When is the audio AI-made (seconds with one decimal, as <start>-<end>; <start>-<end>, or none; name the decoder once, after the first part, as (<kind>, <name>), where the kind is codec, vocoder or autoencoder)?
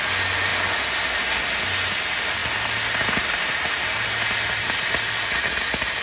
none